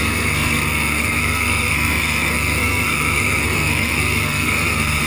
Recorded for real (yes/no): no